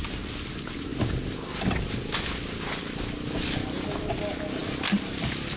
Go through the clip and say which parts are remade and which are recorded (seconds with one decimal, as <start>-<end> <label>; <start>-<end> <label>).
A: 0.0-5.6 recorded